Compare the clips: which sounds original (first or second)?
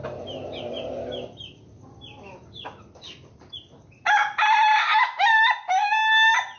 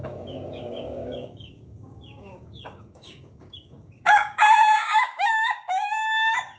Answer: first